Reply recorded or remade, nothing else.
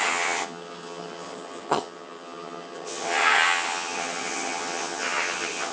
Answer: remade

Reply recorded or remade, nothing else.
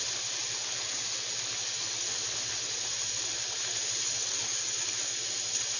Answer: recorded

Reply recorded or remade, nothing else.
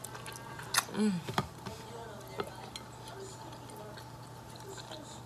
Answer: recorded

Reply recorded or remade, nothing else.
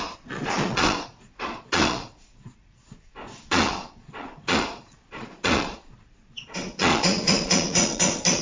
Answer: remade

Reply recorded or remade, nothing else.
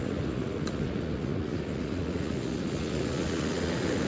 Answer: remade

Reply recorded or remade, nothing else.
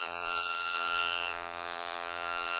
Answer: remade